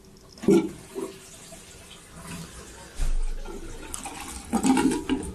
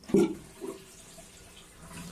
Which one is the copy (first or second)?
second